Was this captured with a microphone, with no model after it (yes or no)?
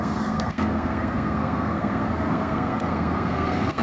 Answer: no